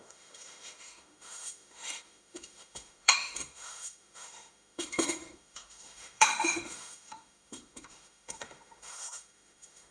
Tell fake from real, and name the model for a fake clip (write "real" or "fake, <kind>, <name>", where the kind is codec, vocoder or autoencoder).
fake, autoencoder, DAC-VAE